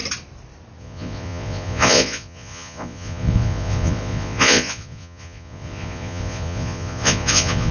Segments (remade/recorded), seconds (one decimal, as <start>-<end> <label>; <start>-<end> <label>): 0.0-0.8 recorded; 0.8-7.7 remade